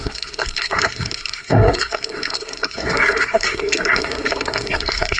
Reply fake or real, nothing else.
fake